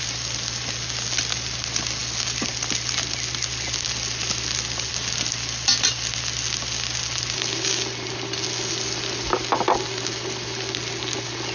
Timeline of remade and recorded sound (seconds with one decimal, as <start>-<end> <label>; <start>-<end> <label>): 0.0-11.5 recorded